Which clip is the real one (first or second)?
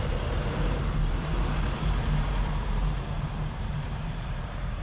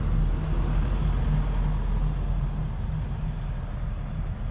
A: second